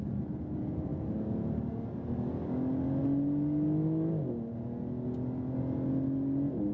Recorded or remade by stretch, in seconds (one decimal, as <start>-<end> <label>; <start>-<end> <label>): 0.0-6.7 recorded